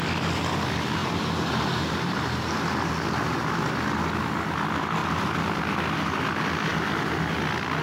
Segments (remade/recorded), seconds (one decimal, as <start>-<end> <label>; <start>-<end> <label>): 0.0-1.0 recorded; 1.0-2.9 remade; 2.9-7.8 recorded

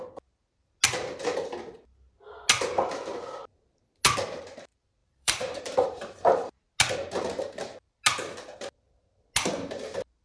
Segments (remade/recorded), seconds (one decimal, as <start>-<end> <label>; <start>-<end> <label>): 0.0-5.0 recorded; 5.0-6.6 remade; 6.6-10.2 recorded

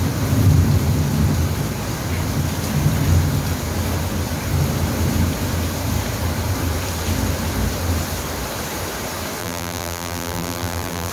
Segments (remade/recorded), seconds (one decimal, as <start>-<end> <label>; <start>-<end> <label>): 0.0-9.4 recorded; 9.4-11.1 remade